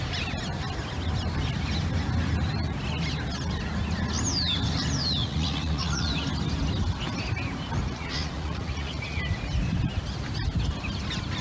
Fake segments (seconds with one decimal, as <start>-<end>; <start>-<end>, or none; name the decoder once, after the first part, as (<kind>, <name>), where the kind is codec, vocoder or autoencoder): 5.2-6.1 (vocoder, Vocos); 7.8-9.2